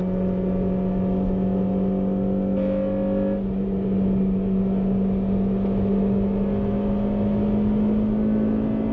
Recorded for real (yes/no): yes